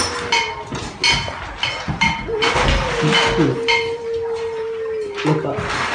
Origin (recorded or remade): recorded